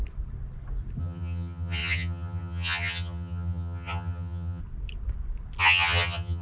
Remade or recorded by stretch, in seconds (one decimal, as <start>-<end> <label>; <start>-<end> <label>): 0.0-1.0 recorded; 1.0-4.6 remade; 4.6-5.6 recorded; 5.6-6.4 remade